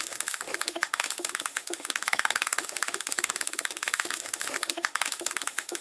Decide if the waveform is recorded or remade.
remade